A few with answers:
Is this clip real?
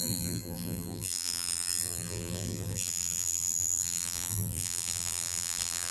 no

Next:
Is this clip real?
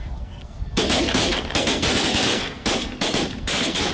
no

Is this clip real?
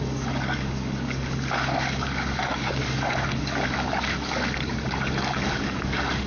no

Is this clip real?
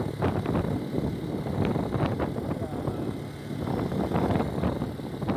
yes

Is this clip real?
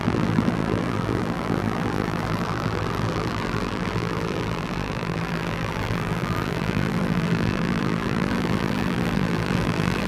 no